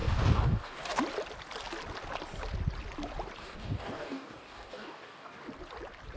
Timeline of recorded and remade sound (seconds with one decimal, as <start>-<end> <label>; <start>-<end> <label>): 0.0-1.0 remade; 1.0-3.4 recorded; 3.4-5.4 remade; 5.4-6.2 recorded